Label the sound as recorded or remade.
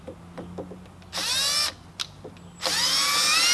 recorded